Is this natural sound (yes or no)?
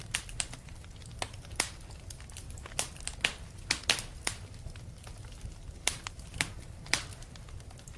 yes